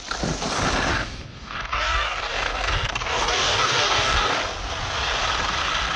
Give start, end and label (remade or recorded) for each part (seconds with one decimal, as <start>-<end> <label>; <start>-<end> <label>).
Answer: 0.0-0.9 recorded; 0.9-4.4 remade; 4.4-6.0 recorded